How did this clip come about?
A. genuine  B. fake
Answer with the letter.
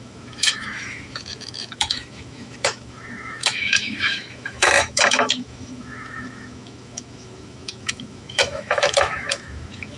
B